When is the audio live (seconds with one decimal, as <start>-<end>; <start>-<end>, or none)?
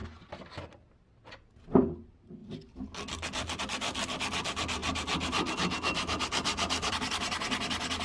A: 0.0-8.0